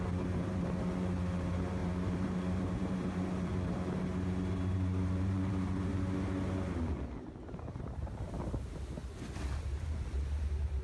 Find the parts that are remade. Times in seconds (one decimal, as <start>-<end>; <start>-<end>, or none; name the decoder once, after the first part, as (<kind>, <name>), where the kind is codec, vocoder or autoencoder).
0.0-5.9 (vocoder, BigVGAN v2); 7.8-9.0; 9.6-10.8